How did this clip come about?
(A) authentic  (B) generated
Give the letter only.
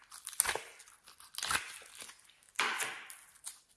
A